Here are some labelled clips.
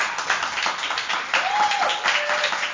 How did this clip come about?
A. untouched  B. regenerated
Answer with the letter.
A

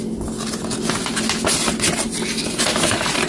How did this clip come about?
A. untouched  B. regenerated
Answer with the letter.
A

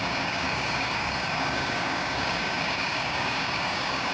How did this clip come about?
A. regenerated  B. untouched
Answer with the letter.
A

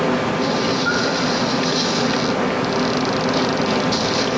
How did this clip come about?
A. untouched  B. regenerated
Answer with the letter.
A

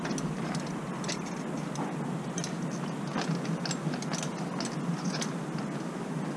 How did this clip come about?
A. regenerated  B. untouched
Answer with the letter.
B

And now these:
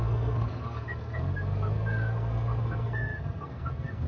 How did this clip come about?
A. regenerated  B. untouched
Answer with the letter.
A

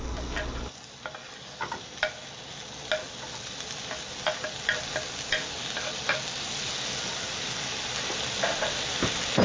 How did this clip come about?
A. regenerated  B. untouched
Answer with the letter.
B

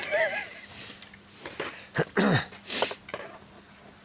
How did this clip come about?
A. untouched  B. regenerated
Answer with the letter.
A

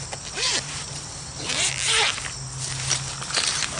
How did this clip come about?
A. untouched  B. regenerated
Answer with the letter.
A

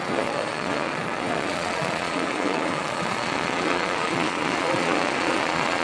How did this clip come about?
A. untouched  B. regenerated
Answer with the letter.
B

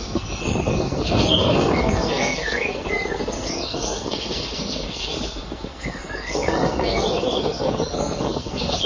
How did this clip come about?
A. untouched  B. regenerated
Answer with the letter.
B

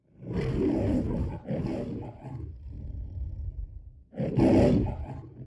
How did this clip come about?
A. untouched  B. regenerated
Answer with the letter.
A